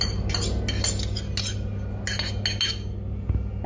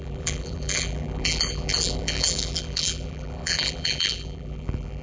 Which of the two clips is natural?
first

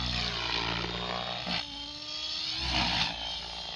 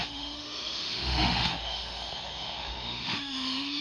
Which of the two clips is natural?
first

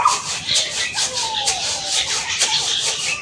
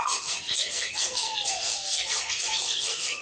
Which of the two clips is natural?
first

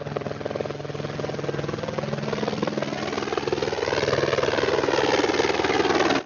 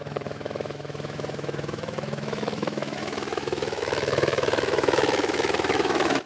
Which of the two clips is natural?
first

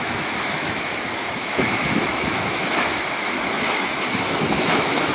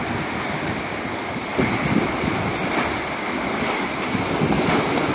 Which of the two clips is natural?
second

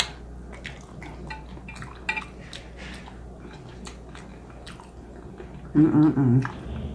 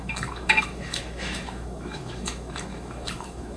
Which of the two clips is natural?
first